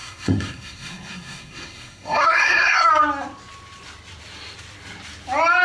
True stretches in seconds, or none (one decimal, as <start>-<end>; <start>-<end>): 2.9-5.6